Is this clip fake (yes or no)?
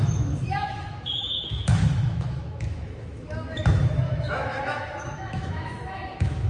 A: yes